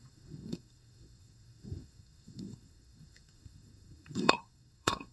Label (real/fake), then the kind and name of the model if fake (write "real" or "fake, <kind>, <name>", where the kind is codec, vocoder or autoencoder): fake, codec, SNAC